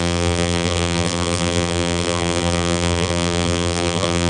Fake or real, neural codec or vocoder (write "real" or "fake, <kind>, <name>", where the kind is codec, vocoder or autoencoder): fake, vocoder, BigVGAN v2